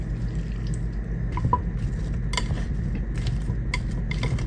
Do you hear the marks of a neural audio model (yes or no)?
no